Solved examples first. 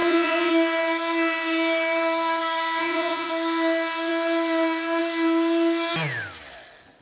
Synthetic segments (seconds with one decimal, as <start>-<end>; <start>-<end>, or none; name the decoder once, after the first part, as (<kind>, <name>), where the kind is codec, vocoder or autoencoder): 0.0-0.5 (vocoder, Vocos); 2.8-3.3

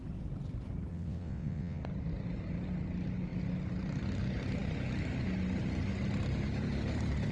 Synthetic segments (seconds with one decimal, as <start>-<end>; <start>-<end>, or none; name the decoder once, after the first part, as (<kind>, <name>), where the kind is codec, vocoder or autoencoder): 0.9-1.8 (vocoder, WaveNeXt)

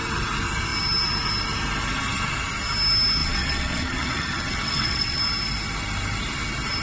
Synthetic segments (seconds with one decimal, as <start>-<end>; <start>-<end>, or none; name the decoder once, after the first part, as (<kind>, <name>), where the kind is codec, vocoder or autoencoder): 3.2-5.2 (vocoder, WaveNeXt)